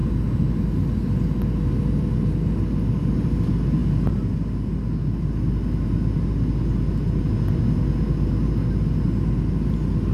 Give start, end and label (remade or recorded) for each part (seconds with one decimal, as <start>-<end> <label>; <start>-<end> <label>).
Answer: 0.0-10.1 recorded